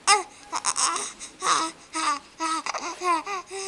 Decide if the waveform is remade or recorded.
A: recorded